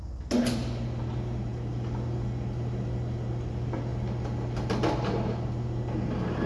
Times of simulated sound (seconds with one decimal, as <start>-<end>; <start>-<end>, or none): none